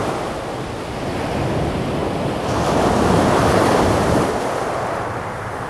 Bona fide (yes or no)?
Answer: yes